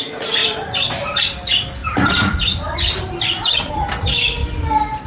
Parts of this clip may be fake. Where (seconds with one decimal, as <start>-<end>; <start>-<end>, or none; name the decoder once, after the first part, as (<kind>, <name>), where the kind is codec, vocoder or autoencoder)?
0.4-1.2 (vocoder, BigVGAN v2); 1.8-3.7